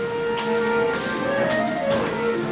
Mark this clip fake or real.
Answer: real